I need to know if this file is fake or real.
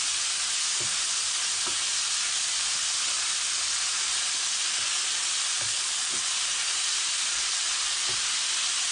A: real